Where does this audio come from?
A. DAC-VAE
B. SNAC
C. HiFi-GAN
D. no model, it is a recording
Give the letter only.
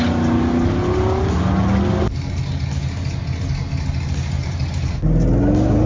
D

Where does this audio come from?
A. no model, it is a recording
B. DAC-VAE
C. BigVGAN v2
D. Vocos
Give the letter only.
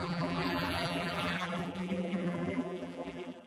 C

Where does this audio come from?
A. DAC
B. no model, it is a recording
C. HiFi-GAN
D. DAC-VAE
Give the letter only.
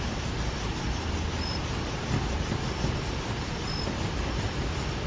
B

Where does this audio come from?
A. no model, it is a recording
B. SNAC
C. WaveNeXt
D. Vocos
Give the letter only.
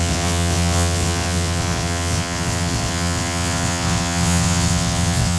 C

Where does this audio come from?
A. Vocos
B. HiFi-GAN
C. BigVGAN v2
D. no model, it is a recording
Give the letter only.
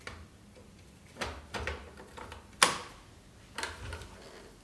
D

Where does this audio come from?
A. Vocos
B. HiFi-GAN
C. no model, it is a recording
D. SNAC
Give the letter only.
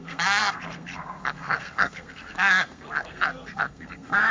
D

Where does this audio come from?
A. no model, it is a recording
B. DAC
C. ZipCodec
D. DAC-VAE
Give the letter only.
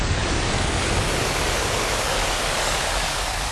B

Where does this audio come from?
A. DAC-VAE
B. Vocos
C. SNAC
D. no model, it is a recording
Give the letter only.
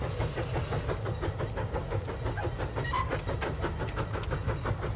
D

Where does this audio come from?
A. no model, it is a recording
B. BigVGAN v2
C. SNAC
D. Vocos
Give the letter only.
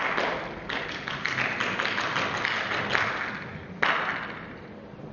A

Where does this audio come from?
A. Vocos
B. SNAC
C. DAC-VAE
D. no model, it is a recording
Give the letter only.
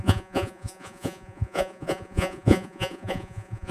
A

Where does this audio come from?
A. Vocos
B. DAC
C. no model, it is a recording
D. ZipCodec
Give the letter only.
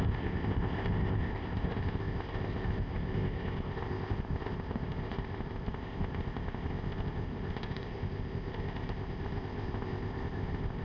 D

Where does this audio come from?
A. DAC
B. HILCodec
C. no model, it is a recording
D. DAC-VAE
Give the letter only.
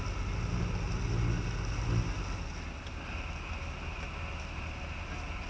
C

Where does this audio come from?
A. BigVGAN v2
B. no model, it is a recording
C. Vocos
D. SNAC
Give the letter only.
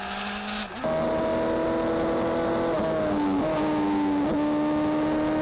B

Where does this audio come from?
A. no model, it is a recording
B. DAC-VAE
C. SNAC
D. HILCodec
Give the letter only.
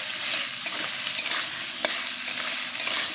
A